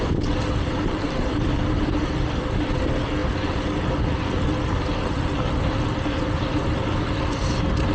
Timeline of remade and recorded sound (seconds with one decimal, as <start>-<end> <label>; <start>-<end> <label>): 0.0-7.9 remade